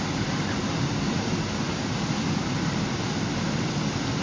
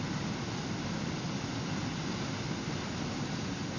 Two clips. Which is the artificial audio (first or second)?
second